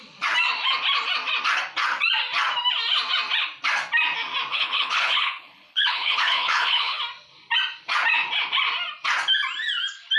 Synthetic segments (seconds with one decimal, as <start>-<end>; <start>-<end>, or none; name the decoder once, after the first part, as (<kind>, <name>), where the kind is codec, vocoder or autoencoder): 4.5-7.0 (codec, HILCodec)